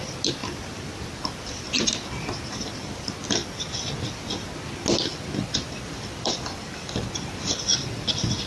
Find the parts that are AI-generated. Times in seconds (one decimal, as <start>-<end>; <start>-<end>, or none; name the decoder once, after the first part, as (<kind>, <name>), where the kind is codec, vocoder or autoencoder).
5.1-7.9 (vocoder, BigVGAN v2)